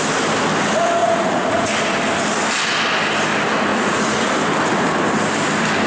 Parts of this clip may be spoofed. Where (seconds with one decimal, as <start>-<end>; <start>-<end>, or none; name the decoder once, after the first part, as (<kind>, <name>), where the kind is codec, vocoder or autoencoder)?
1.0-1.7 (vocoder, Vocos); 3.7-4.3

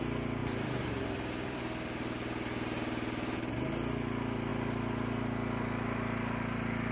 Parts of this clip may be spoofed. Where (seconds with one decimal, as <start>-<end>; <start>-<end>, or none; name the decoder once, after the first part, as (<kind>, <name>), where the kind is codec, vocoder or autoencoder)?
0.4-1.6 (vocoder, BigVGAN v2)

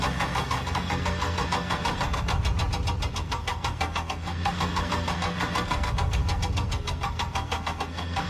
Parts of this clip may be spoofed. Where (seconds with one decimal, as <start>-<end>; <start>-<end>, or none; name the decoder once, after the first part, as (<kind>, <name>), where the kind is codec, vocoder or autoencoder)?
0.0-2.3 (codec, SNAC); 3.1-8.3